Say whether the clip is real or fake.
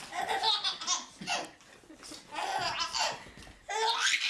real